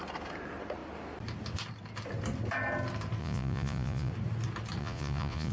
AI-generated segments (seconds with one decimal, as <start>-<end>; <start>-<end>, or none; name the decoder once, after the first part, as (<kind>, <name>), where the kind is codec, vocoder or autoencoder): 3.2-4.1 (vocoder, Vocos); 4.8-5.5